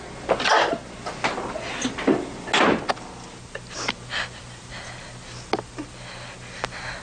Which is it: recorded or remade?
recorded